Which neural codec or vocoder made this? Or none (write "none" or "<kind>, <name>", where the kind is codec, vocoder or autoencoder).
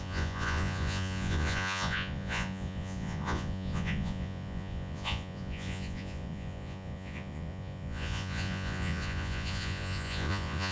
vocoder, Vocos